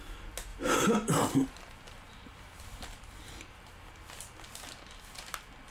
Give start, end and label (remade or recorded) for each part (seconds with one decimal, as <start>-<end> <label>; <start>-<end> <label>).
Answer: 0.0-0.5 recorded; 0.5-3.4 remade; 3.4-5.7 recorded